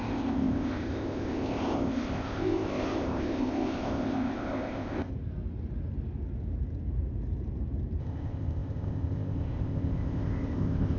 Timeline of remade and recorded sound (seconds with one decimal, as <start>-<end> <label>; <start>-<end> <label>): 0.0-5.1 remade; 5.1-8.0 recorded; 8.0-11.0 remade